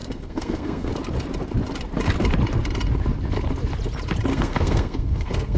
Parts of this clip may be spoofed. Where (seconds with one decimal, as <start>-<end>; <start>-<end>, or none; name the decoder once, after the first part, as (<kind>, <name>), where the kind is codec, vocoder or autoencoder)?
0.0-0.9 (codec, SNAC); 4.3-5.6